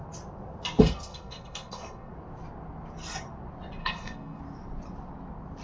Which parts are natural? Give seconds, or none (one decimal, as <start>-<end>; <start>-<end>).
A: 0.0-0.8; 2.1-3.8; 4.4-5.6